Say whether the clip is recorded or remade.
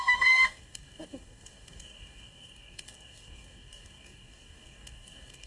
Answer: remade